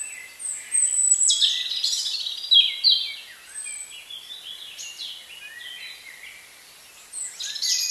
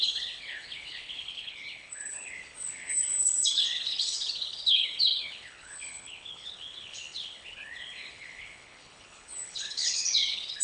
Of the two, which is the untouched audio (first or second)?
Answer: first